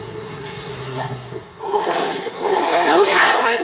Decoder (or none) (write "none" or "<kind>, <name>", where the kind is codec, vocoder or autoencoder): codec, SNAC